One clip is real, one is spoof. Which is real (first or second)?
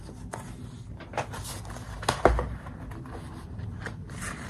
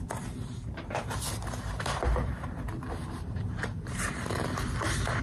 first